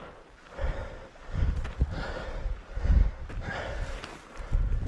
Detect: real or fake real